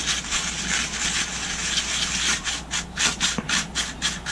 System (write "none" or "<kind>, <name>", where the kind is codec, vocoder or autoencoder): none